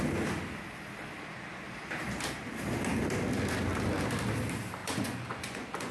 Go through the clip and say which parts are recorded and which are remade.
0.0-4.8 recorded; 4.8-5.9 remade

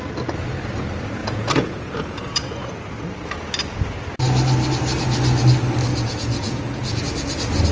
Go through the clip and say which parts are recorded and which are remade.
0.0-1.2 recorded; 1.2-2.7 remade; 2.7-5.9 recorded; 5.9-7.0 remade; 7.0-7.7 recorded

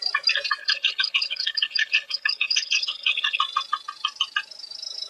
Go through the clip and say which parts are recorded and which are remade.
0.0-0.6 recorded; 0.6-3.4 remade; 3.4-5.1 recorded

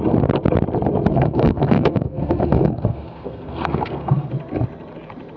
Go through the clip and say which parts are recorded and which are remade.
0.0-1.1 recorded; 1.1-4.3 remade; 4.3-5.4 recorded